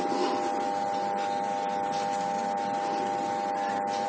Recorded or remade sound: recorded